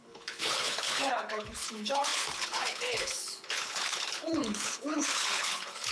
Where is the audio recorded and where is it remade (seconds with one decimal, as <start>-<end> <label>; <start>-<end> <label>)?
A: 0.0-5.9 remade